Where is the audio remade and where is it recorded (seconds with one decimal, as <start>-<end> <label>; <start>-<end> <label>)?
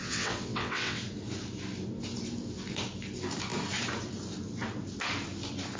0.0-1.0 remade; 1.0-5.8 recorded